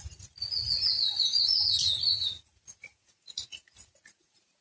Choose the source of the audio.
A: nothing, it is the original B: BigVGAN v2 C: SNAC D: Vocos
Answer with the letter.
D